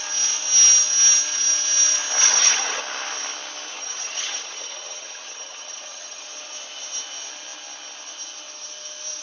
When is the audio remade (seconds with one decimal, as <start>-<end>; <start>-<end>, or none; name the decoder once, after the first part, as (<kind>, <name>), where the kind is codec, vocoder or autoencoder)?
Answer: 2.2-2.8 (vocoder, HiFi-GAN); 3.7-6.2